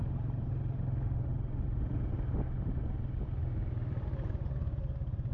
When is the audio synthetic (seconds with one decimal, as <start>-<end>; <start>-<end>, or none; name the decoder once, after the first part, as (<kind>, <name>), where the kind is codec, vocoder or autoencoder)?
none